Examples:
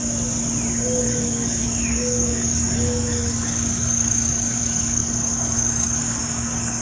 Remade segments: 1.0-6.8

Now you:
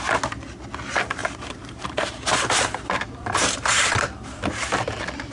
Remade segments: 1.2-4.4

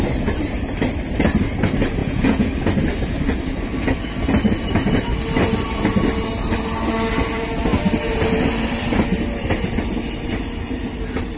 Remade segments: 2.0-2.5

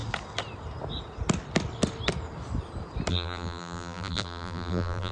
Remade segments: 3.1-5.1

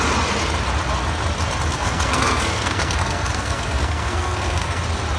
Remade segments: 1.7-4.8

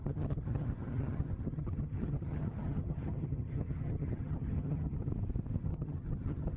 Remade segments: 0.0-5.1; 5.6-6.6

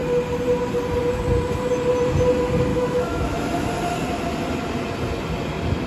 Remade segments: 2.7-3.7